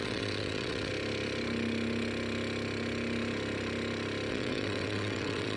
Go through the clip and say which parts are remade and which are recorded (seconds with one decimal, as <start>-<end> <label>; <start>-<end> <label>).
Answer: 0.0-0.9 remade; 0.9-4.3 recorded; 4.3-5.6 remade

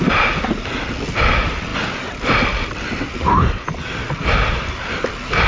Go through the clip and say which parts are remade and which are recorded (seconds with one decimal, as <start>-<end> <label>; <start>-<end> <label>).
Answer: 0.0-1.7 recorded; 1.7-4.2 remade; 4.2-5.5 recorded

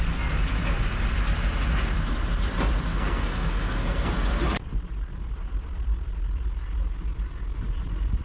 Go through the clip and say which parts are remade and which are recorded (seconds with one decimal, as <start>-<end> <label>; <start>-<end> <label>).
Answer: 0.0-2.9 recorded; 2.9-4.1 remade; 4.1-8.2 recorded

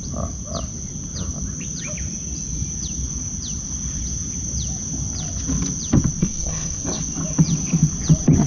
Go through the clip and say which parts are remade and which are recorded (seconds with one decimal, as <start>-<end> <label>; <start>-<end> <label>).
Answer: 0.0-6.2 recorded; 6.2-7.0 remade; 7.0-8.5 recorded

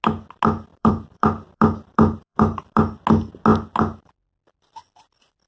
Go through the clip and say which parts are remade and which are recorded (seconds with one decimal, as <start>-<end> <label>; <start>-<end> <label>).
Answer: 0.0-0.7 recorded; 0.7-3.0 remade; 3.0-5.5 recorded

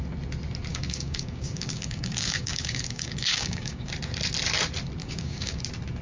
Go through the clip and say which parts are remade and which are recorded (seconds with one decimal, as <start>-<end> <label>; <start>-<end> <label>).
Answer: 0.0-0.7 recorded; 0.7-3.9 remade; 3.9-5.0 recorded; 5.0-5.6 remade; 5.6-6.0 recorded